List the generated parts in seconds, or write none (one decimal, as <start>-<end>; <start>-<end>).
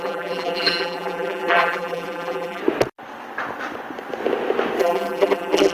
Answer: 0.0-2.6; 4.8-5.7